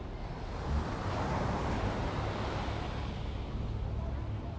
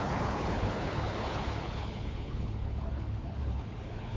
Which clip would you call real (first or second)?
first